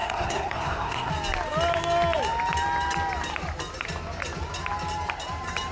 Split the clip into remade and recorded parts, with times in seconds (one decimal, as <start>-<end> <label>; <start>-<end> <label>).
0.0-1.1 remade; 1.1-5.7 recorded